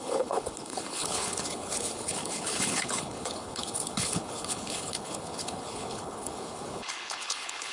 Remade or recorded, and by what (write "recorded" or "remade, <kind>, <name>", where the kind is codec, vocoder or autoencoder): remade, codec, HILCodec